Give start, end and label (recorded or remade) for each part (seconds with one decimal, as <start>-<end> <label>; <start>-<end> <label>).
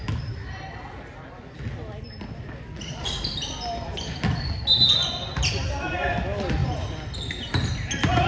0.0-8.3 recorded